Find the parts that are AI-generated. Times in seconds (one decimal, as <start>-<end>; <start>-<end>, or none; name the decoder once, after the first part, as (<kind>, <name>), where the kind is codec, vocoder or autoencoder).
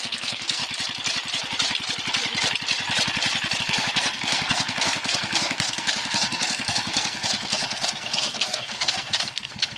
0.0-0.6 (codec, SNAC); 3.6-9.8